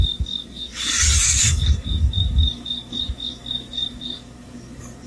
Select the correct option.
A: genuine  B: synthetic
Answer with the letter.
B